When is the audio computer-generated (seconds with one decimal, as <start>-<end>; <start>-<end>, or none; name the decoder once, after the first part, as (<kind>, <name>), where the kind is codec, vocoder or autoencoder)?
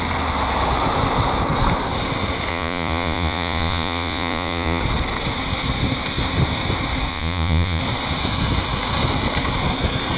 2.5-4.8 (vocoder, Vocos); 7.1-7.8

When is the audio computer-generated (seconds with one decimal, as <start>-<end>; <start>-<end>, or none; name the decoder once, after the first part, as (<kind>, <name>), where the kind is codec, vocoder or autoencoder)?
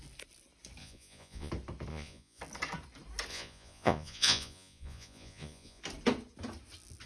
0.8-1.5 (vocoder, Vocos); 1.9-2.4; 3.3-5.8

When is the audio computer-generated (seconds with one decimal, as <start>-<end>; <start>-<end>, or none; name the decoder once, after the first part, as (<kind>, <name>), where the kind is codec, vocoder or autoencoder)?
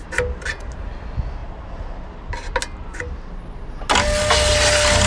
none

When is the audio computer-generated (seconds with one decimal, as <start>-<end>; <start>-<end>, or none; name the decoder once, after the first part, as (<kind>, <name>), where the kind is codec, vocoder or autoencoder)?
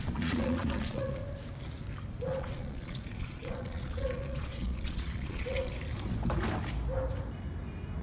0.0-1.2 (vocoder, Vocos); 2.1-5.7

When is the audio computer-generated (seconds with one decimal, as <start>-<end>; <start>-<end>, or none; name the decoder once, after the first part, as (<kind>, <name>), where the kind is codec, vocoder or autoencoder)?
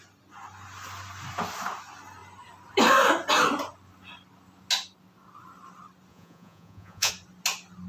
6.1-7.1 (vocoder, Vocos)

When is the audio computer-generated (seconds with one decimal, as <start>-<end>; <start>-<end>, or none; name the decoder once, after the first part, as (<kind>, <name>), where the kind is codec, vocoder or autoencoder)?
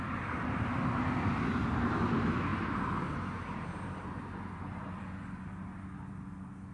none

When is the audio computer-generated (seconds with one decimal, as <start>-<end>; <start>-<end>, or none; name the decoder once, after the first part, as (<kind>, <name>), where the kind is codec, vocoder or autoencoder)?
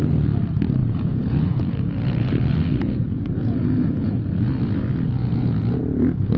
0.8-4.5 (vocoder, Vocos); 5.2-5.8